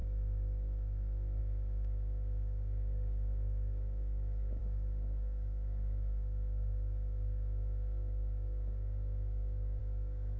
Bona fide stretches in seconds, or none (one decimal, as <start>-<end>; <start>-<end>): none